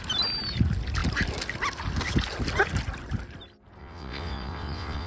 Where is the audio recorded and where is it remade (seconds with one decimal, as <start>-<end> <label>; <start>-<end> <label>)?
0.0-3.8 recorded; 3.8-5.1 remade